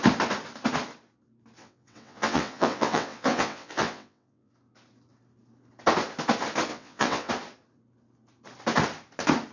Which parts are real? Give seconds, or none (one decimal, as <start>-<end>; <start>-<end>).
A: 0.0-1.6; 4.5-6.7; 7.3-9.5